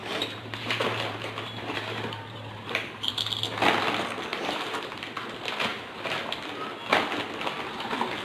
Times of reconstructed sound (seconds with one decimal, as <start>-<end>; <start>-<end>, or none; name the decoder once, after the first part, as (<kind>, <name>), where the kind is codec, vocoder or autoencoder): 0.0-3.1 (vocoder, BigVGAN v2); 4.3-4.9